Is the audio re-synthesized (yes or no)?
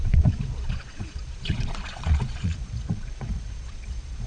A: yes